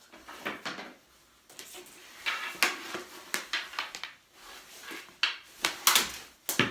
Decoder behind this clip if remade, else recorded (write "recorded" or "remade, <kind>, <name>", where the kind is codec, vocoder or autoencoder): recorded